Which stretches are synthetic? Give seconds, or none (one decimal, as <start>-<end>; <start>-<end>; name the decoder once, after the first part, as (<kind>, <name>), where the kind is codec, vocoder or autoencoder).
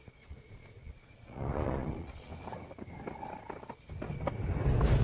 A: 0.0-2.3 (vocoder, Vocos)